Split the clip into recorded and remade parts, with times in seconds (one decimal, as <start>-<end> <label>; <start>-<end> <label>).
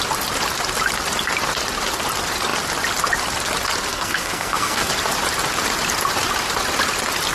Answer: 0.0-3.9 recorded; 3.9-4.9 remade; 4.9-7.3 recorded